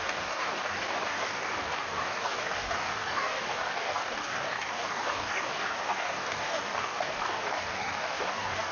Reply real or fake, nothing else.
fake